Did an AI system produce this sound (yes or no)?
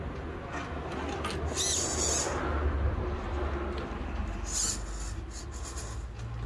no